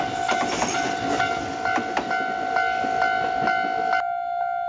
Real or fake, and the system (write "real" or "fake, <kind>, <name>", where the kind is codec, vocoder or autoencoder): real